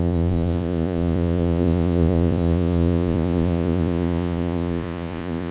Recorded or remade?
remade